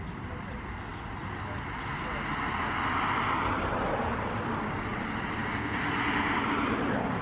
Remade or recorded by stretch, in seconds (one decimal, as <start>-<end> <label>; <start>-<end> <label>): 0.0-0.9 remade; 0.9-4.5 recorded; 4.5-5.4 remade; 5.4-6.1 recorded; 6.1-7.2 remade

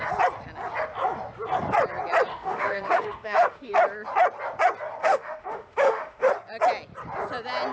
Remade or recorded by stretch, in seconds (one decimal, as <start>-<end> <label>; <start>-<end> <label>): 0.0-2.3 recorded; 2.3-3.7 remade; 3.7-5.0 recorded; 5.0-6.3 remade; 6.3-7.7 recorded

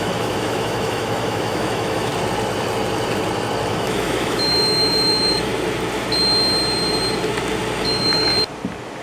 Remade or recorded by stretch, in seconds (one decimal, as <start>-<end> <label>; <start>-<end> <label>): 0.0-2.1 remade; 2.1-3.7 recorded; 3.7-5.5 remade; 5.5-7.8 recorded; 7.8-8.3 remade; 8.3-9.0 recorded

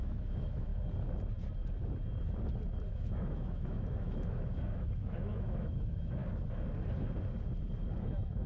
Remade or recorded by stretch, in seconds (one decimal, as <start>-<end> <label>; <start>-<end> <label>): 0.0-0.7 remade; 0.7-2.9 recorded; 2.9-6.2 remade; 6.2-8.0 recorded; 8.0-8.5 remade

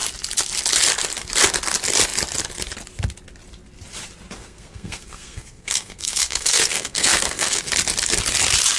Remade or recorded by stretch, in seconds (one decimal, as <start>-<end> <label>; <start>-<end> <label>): 0.0-4.4 recorded; 4.4-7.7 remade; 7.7-8.8 recorded

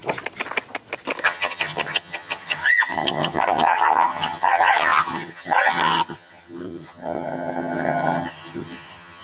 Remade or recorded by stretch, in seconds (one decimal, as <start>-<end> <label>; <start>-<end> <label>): 0.0-1.2 recorded; 1.2-9.2 remade

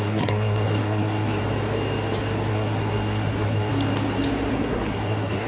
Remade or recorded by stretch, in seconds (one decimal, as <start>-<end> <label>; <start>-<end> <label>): 0.0-1.4 remade; 1.4-2.5 recorded; 2.5-3.7 remade; 3.7-4.5 recorded; 4.5-5.5 remade

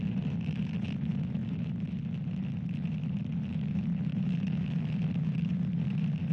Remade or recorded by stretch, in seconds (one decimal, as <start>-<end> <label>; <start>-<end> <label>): 0.0-4.1 recorded; 4.1-5.0 remade; 5.0-6.3 recorded